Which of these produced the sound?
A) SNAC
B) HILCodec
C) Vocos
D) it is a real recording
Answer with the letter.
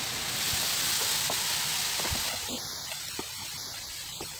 D